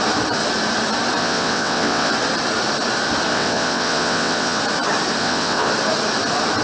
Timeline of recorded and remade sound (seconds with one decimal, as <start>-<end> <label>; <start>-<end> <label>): 0.0-1.2 recorded; 1.2-2.1 remade; 2.1-3.3 recorded; 3.3-4.6 remade; 4.6-5.2 recorded; 5.2-5.7 remade; 5.7-6.6 recorded